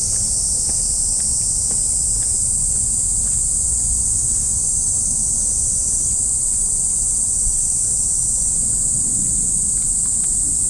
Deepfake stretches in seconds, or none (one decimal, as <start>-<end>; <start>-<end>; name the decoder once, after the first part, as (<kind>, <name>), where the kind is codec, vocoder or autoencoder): 4.1-4.6 (autoencoder, DAC-VAE)